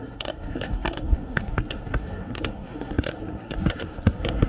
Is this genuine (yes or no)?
no